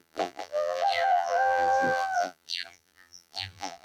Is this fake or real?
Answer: fake